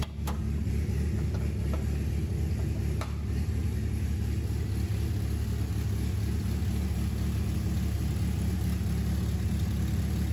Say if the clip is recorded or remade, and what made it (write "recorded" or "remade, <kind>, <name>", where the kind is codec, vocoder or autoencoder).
recorded